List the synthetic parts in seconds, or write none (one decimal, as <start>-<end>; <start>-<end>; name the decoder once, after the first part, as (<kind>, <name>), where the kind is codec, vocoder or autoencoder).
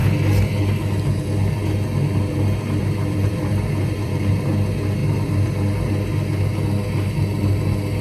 2.8-4.5 (vocoder, BigVGAN v2); 5.0-5.6